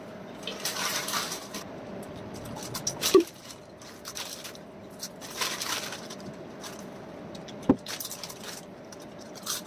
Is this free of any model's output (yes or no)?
yes